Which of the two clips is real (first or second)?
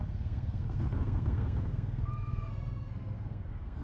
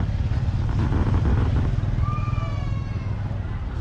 second